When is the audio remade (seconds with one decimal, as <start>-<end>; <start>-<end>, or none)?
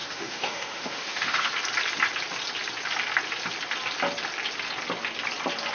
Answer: 0.0-1.5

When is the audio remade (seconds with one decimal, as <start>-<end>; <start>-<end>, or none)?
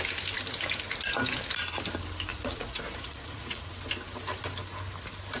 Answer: 2.3-3.7